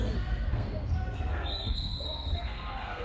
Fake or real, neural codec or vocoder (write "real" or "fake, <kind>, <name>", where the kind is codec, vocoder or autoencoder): fake, codec, SNAC